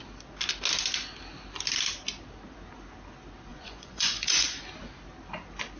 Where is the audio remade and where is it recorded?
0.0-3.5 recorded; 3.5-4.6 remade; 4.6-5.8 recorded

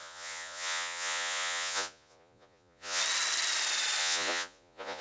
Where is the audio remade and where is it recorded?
0.0-3.0 remade; 3.0-4.0 recorded; 4.0-5.0 remade

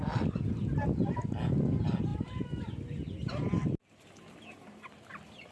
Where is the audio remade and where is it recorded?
0.0-5.5 recorded